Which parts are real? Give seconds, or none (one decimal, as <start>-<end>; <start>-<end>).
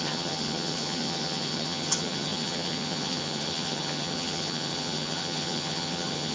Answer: none